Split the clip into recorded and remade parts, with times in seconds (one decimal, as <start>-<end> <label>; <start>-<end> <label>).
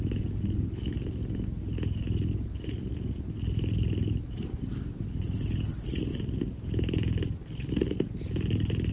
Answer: 0.0-6.1 recorded; 6.1-6.6 remade; 6.6-8.9 recorded